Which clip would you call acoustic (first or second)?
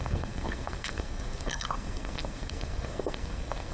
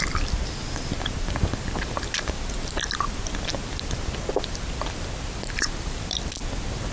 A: second